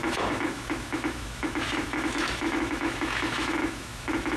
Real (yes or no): no